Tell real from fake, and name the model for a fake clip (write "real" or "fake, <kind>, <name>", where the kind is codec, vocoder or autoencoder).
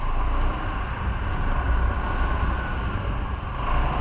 real